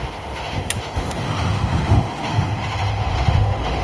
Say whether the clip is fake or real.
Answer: fake